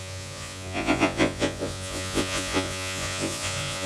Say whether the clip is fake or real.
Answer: fake